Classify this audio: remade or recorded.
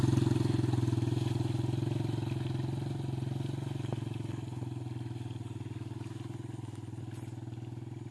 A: recorded